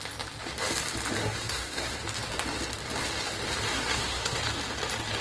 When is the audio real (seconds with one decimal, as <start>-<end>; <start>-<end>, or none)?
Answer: 0.0-1.2; 2.0-3.7; 4.4-5.2